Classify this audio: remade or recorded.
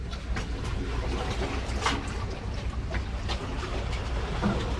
recorded